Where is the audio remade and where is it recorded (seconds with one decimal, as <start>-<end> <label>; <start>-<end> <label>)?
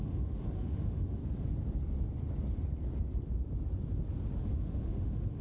0.0-1.2 remade; 1.2-4.4 recorded; 4.4-5.4 remade